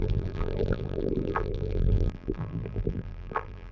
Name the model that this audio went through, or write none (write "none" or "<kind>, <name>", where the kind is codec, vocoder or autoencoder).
vocoder, BigVGAN v2